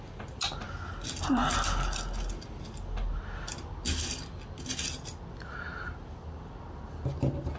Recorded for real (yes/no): yes